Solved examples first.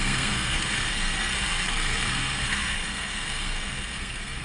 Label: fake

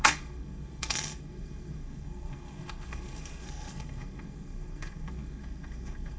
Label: fake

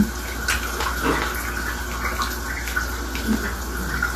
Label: real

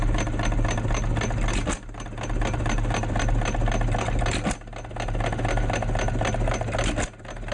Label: real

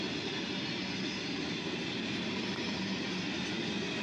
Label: real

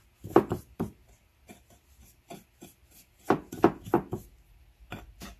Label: real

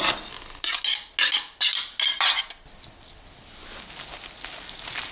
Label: real